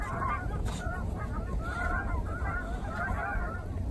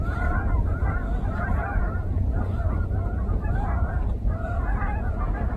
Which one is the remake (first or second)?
second